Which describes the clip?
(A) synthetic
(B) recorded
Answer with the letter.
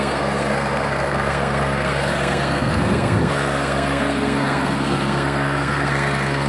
A